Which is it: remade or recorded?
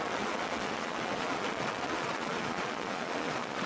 remade